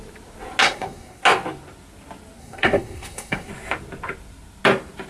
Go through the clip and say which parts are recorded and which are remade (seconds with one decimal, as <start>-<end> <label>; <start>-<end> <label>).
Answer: 0.0-0.6 recorded; 0.6-1.2 remade; 1.2-2.4 recorded; 2.4-3.5 remade; 3.5-5.1 recorded